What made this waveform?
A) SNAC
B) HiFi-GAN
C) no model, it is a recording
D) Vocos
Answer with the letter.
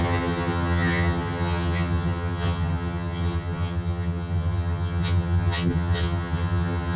B